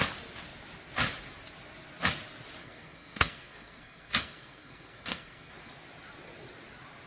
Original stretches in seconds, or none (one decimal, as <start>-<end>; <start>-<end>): 0.0-2.6; 5.5-7.1